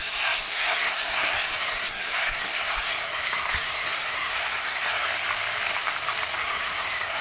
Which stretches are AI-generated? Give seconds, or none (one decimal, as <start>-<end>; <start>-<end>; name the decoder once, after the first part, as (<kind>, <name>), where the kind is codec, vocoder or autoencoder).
0.0-5.1 (codec, SNAC); 6.4-7.2